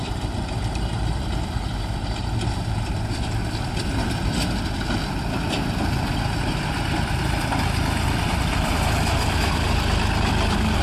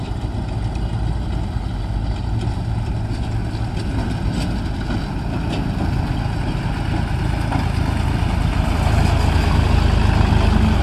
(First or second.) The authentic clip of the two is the second